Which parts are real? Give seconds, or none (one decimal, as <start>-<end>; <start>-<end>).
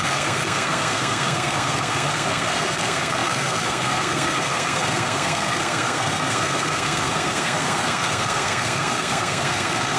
none